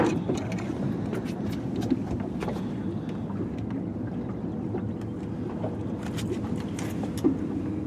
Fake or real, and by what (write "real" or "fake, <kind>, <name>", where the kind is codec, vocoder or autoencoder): real